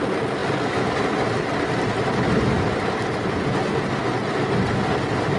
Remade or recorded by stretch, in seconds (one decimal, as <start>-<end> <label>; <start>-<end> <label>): 0.0-5.4 recorded

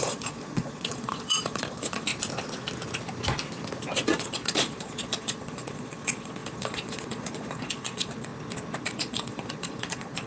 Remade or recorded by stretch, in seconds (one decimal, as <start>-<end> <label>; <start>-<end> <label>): 0.0-2.1 remade; 2.1-4.1 recorded; 4.1-8.3 remade; 8.3-8.8 recorded; 8.8-10.3 remade

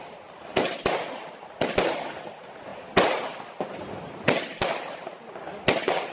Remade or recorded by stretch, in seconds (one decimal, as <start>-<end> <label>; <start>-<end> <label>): 0.0-6.1 recorded

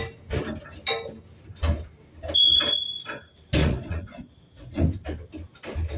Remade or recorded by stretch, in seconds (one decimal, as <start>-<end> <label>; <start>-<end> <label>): 0.0-3.6 recorded; 3.6-4.8 remade; 4.8-6.0 recorded

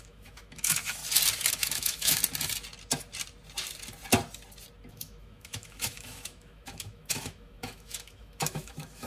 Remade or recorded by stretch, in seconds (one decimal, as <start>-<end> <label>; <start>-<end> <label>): 0.0-1.0 remade; 1.0-1.5 recorded; 1.5-2.2 remade; 2.2-4.9 recorded; 4.9-9.1 remade

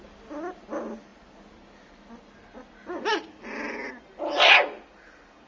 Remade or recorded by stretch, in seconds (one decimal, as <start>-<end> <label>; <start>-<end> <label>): 0.0-5.5 recorded